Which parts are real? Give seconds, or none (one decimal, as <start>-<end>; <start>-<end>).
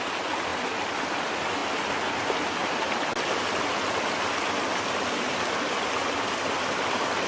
0.0-7.3